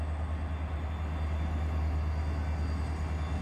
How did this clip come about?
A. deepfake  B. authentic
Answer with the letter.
B